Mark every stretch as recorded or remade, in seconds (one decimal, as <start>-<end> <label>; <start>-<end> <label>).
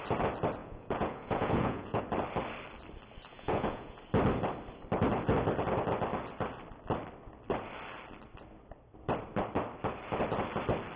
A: 0.0-0.6 recorded; 0.6-2.0 remade; 2.0-3.3 recorded; 3.3-4.0 remade; 4.0-11.0 recorded